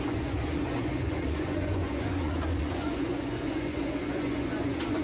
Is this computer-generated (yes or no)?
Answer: yes